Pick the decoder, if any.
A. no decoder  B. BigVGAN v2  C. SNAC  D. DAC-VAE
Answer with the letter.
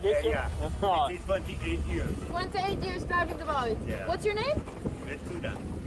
A